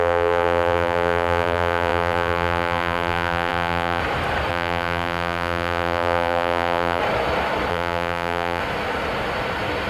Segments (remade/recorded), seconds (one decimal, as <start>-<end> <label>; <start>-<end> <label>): 0.0-4.0 remade; 4.0-4.5 recorded; 4.5-7.0 remade; 7.0-7.7 recorded; 7.7-8.6 remade; 8.6-9.9 recorded